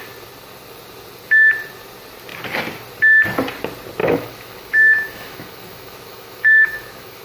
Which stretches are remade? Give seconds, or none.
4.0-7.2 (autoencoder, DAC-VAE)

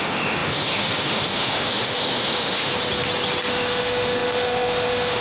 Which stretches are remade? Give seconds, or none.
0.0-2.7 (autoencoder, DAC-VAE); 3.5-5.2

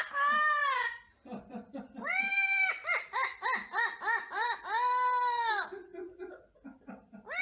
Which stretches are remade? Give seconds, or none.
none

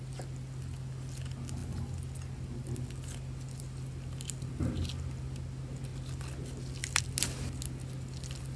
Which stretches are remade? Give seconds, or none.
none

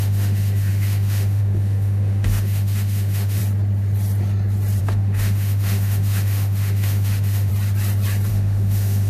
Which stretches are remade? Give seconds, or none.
0.0-3.4 (autoencoder, DAC-VAE); 4.8-7.5; 8.3-9.1

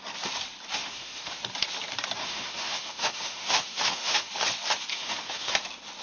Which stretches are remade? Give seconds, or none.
0.8-1.4 (autoencoder, DAC-VAE); 2.2-4.3; 4.9-5.5

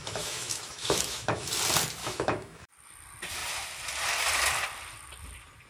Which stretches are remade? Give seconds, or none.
0.0-1.5 (autoencoder, DAC-VAE); 2.0-2.7